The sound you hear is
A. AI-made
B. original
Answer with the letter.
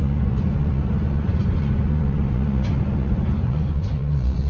A